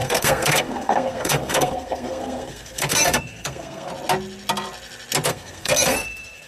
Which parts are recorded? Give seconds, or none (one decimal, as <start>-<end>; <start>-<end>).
3.9-5.3